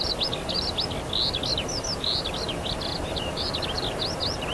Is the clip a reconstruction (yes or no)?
no